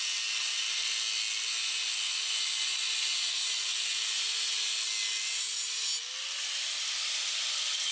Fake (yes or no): no